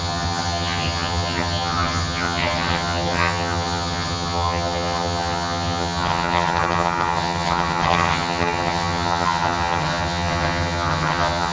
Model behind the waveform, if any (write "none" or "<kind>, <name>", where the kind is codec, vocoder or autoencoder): vocoder, HiFi-GAN